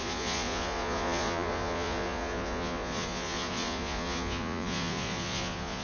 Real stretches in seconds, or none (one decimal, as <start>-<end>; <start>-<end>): none